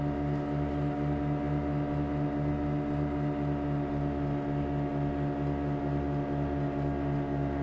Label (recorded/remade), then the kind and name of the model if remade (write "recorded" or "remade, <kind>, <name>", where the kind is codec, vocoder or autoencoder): recorded